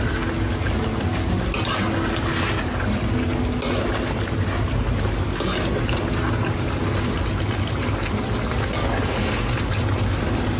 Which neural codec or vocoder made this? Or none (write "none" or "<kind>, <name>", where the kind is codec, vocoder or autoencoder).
none